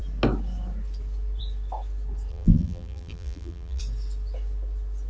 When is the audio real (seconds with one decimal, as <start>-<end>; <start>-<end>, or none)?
0.0-2.3; 3.8-5.1